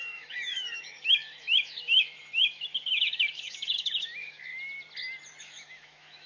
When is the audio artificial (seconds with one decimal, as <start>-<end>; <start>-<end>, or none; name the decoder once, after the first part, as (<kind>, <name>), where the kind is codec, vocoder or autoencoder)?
0.0-4.5 (autoencoder, DAC-VAE); 5.4-6.3